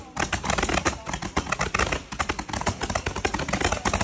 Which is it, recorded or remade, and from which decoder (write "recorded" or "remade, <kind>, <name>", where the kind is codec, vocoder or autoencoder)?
recorded